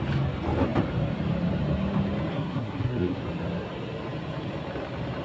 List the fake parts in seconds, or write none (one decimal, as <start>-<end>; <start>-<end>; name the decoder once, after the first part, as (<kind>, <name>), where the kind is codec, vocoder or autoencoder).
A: 2.3-3.2 (codec, SNAC)